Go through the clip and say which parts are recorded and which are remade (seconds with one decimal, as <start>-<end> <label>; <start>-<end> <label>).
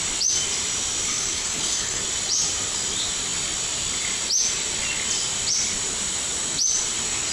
0.0-1.1 recorded; 1.1-2.0 remade; 2.0-7.3 recorded